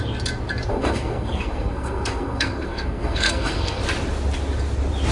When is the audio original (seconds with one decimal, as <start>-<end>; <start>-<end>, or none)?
0.0-0.7; 3.8-5.1